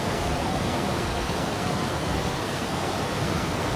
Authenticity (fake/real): fake